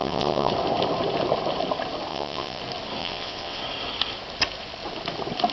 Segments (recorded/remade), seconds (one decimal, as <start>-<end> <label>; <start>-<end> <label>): 0.0-0.5 remade; 0.5-2.1 recorded; 2.1-2.6 remade; 2.6-3.0 recorded; 3.0-3.6 remade; 3.6-5.5 recorded